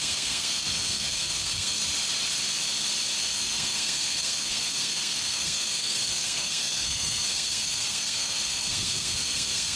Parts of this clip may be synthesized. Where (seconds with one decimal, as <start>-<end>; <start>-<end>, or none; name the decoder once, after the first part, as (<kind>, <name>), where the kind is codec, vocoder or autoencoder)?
0.0-1.8 (codec, SNAC); 3.2-9.8

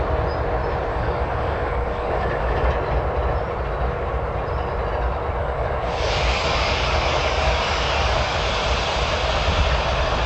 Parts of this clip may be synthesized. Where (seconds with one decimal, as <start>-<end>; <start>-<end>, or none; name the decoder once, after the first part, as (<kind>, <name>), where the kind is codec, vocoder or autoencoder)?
0.9-2.7 (codec, DAC); 5.4-8.5

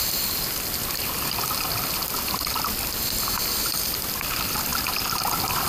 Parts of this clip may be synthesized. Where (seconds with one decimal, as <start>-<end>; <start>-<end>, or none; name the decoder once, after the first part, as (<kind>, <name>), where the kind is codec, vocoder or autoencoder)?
none

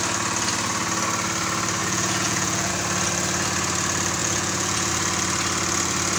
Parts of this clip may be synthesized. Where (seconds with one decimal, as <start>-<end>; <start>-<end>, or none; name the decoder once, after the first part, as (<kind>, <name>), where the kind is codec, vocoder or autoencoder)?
1.8-2.7 (vocoder, Vocos); 4.2-4.9

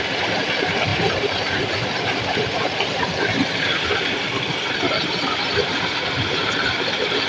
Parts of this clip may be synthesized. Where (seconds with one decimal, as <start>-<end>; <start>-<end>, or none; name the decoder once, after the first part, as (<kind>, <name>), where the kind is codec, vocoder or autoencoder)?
none

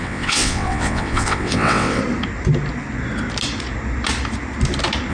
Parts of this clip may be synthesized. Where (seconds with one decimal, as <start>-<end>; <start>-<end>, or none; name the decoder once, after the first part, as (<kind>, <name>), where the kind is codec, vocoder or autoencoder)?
0.0-2.0 (vocoder, WaveNeXt)

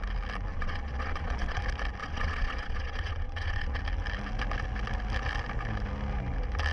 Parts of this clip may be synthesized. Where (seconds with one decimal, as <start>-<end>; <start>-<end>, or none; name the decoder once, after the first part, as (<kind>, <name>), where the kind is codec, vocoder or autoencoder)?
0.5-1.6 (vocoder, Vocos); 2.0-3.8